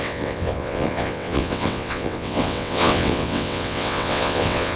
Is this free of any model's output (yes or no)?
no